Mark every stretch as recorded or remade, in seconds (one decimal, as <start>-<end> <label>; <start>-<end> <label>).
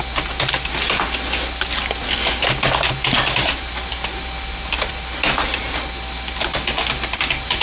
0.0-7.6 recorded